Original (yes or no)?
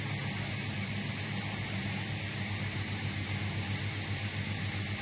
yes